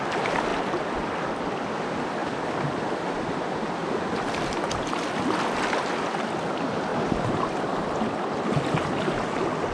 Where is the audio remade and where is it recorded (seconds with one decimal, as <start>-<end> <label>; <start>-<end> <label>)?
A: 0.0-9.7 recorded